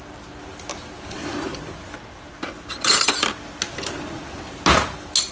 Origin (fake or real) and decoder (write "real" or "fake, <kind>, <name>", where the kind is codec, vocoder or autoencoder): real